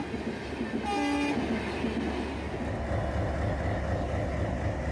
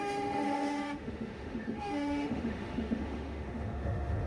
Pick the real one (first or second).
first